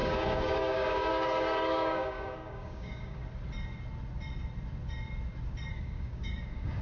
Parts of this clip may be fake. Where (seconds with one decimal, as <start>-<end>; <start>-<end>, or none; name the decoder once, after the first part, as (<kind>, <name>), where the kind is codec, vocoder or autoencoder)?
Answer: 0.0-3.2 (codec, DAC); 5.7-6.8